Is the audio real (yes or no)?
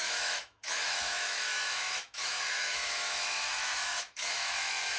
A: no